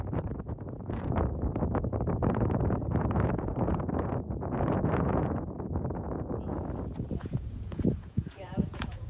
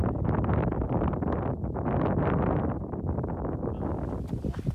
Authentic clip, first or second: second